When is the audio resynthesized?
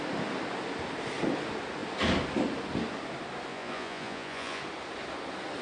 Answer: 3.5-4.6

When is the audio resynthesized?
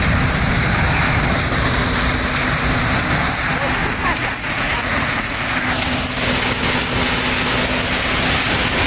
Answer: 4.2-5.5